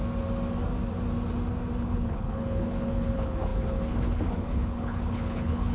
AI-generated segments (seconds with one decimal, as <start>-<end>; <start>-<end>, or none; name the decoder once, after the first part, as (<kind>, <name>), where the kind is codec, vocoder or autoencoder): 1.8-5.7 (codec, HILCodec)